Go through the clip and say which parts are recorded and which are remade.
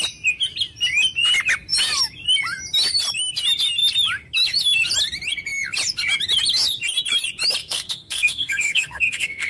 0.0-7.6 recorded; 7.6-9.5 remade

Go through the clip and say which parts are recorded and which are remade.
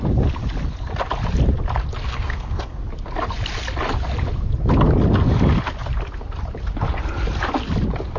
0.0-2.0 recorded; 2.0-2.8 remade; 2.8-8.2 recorded